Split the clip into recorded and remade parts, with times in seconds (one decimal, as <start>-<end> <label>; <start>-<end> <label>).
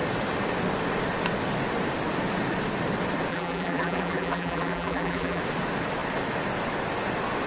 0.0-3.3 recorded; 3.3-5.4 remade; 5.4-7.5 recorded